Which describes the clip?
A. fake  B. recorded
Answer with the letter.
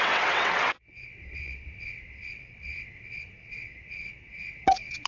A